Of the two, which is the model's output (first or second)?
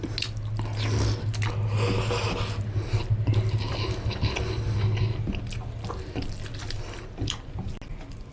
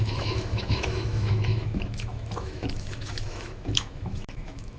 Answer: second